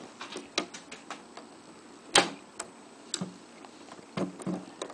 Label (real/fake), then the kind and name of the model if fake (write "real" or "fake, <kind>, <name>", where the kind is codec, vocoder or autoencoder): real